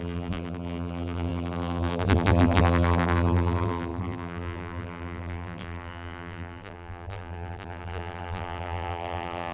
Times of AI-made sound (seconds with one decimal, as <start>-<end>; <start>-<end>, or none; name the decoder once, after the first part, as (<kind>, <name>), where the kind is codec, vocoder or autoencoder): 0.0-9.5 (vocoder, BigVGAN v2)